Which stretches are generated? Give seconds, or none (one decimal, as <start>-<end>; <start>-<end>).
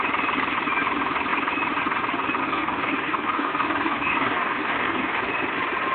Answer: 2.4-5.3